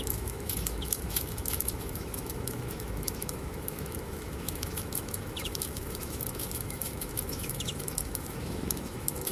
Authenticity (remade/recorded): remade